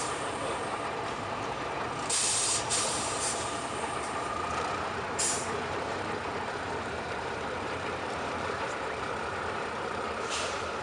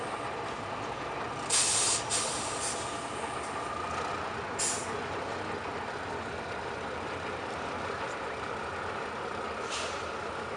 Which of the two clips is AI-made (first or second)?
first